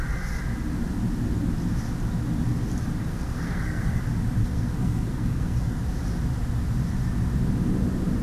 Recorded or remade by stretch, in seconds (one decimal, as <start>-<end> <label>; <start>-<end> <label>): 0.0-3.0 recorded; 3.0-4.0 remade; 4.0-4.4 recorded; 4.4-5.8 remade; 5.8-8.2 recorded